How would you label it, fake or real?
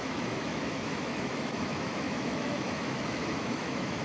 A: fake